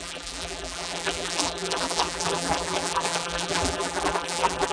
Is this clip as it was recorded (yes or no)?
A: no